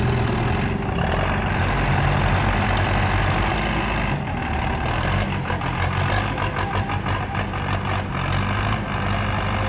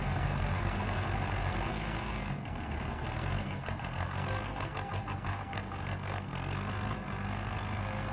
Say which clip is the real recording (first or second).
first